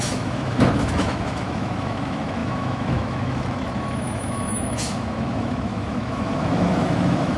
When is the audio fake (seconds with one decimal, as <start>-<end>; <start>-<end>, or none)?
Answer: 0.0-7.4